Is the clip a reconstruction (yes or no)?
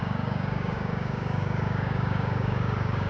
yes